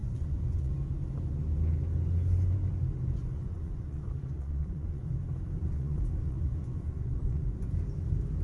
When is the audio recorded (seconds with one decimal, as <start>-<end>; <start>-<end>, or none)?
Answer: 0.7-3.2; 5.1-5.6; 7.7-8.4